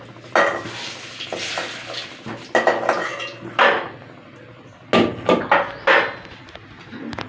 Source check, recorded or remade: recorded